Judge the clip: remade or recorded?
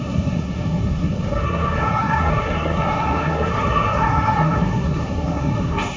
remade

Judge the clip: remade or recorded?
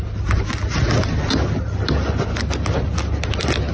recorded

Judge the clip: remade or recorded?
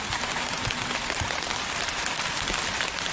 recorded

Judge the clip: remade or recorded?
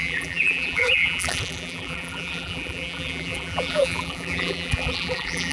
remade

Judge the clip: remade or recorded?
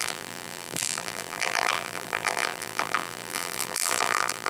remade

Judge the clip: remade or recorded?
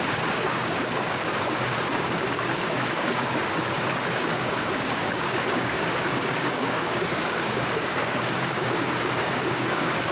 remade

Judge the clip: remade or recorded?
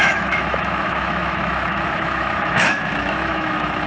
remade